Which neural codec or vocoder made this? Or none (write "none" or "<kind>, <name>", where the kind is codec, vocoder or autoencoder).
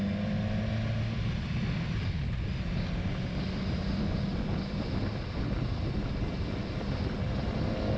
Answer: none